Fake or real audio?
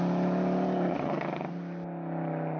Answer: real